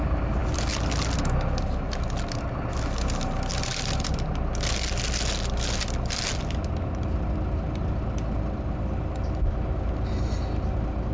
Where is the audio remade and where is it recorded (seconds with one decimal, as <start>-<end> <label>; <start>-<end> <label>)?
0.0-11.1 recorded